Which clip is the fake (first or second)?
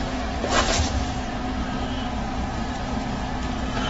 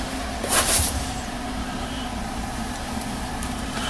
second